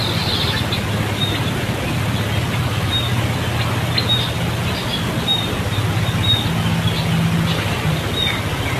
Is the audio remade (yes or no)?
no